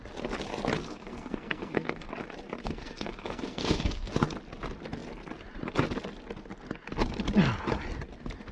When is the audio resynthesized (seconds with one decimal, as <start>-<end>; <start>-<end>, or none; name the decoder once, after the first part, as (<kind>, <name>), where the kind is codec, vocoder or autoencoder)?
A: 0.8-2.1 (codec, SNAC); 2.6-4.1